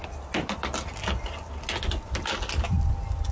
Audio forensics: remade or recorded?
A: recorded